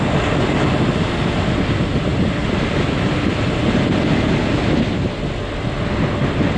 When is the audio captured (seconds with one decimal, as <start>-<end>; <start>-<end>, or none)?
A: 0.0-2.1; 4.0-6.6